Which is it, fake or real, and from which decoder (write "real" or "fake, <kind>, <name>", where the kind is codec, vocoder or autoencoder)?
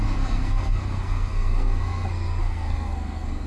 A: fake, codec, SNAC